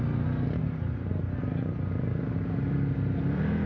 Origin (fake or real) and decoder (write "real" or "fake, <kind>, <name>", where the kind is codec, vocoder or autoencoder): real